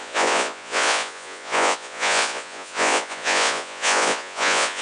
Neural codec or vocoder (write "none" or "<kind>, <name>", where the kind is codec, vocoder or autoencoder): vocoder, Vocos